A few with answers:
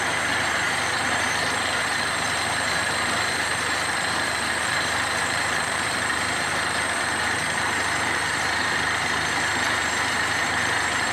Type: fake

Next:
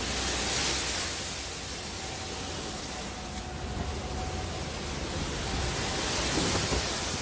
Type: real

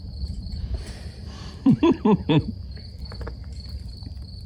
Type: fake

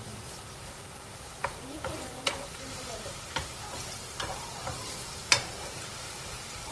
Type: fake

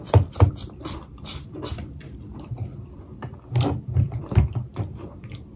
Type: fake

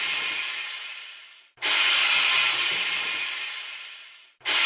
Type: real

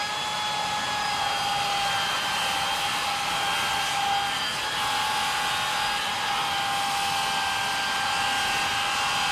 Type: real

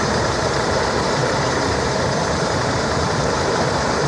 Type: fake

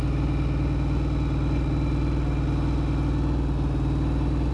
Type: real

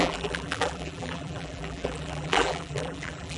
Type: fake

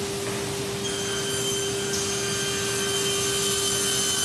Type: real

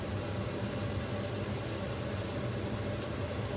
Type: fake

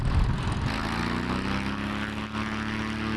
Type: real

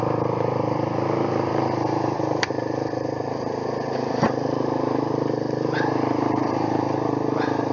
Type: fake